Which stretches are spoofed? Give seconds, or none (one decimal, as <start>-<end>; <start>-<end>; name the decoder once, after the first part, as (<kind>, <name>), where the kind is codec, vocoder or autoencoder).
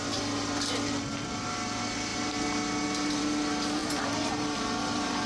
none